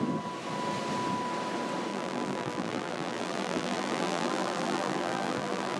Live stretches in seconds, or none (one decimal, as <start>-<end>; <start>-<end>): 0.0-1.9

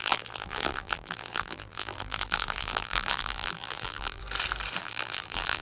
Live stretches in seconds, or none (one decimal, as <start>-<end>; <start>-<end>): 4.2-4.8

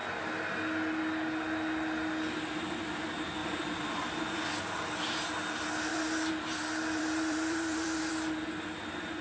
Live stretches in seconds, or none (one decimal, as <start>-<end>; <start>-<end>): 0.0-3.4; 4.5-5.9; 8.1-9.2

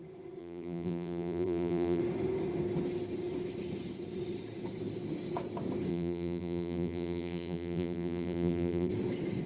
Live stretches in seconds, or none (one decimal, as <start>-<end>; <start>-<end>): 0.0-0.4; 2.0-5.9; 8.9-9.5

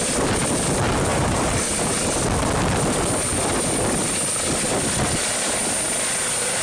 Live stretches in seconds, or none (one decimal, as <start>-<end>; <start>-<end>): 0.0-1.1; 2.2-6.6

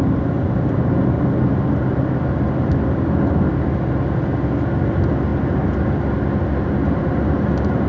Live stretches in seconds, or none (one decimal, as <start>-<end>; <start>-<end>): 0.0-7.9